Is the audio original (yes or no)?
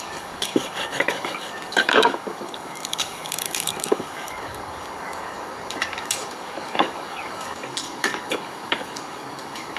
no